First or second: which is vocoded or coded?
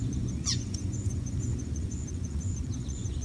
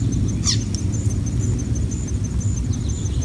first